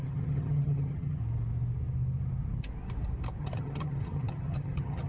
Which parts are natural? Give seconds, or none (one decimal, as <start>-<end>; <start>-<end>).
1.2-3.4